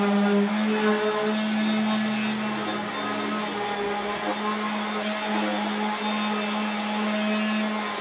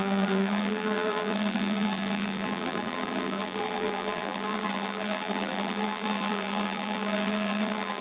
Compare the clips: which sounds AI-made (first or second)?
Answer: second